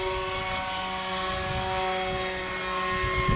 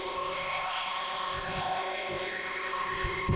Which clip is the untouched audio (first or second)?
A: first